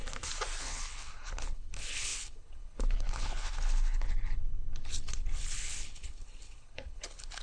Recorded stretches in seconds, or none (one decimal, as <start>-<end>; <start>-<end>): 0.0-0.6